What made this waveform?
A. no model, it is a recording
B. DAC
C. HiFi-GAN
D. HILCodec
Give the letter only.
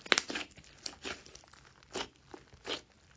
A